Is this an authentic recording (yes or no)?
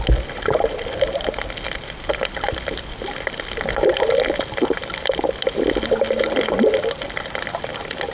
no